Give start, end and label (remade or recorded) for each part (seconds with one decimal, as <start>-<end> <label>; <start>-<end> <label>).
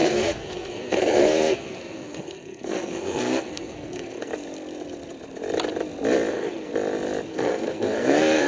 0.0-4.3 remade; 4.3-6.3 recorded; 6.3-6.7 remade; 6.7-7.3 recorded; 7.3-8.5 remade